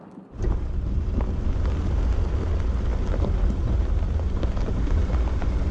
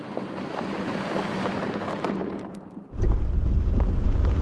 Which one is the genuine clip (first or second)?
first